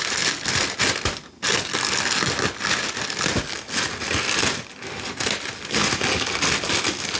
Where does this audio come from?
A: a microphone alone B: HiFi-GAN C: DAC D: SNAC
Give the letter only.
A